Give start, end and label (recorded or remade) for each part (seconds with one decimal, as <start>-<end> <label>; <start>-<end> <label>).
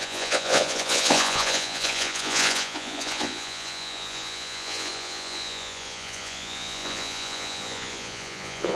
0.0-8.8 remade